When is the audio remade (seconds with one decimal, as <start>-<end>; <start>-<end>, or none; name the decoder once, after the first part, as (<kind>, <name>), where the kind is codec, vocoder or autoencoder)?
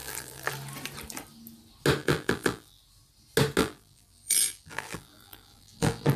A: 0.0-0.5 (vocoder, BigVGAN v2); 2.0-2.8; 3.6-6.2